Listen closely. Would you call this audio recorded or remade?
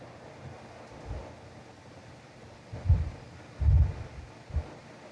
recorded